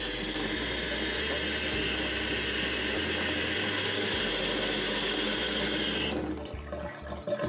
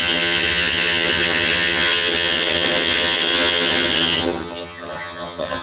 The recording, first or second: first